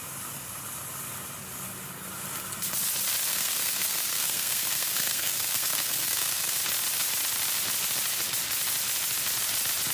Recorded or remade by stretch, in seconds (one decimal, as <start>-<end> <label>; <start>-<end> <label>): 0.0-3.3 recorded; 3.3-6.6 remade; 6.6-9.9 recorded